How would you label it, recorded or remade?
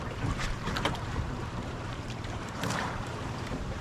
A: remade